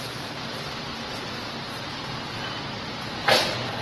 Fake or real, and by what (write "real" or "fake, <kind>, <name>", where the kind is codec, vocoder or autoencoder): real